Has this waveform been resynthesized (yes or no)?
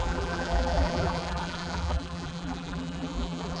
yes